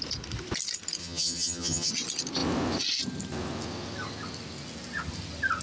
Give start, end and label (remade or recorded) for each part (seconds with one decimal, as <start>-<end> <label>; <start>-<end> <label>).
0.0-1.0 recorded; 1.0-1.9 remade; 1.9-5.6 recorded